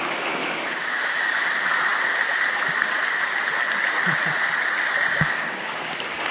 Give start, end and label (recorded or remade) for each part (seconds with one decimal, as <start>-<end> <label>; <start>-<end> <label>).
0.0-0.4 recorded; 0.4-1.4 remade; 1.4-5.1 recorded; 5.1-6.3 remade

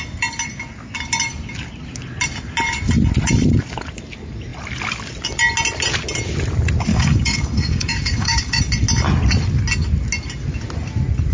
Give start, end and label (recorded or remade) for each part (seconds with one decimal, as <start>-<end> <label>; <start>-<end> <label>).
0.0-6.9 recorded; 6.9-8.6 remade; 8.6-11.3 recorded